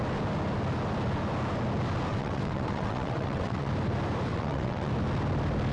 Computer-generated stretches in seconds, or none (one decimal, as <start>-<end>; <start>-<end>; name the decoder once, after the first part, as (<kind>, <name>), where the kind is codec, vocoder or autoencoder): 2.1-3.7 (vocoder, WaveNeXt); 4.3-4.9